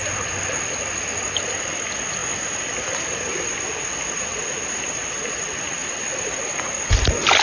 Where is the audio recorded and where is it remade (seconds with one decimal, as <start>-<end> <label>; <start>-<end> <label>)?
0.0-7.4 recorded